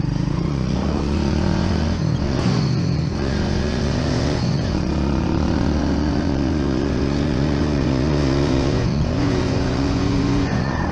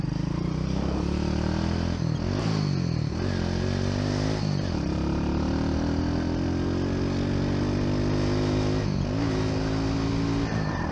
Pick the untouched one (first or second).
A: second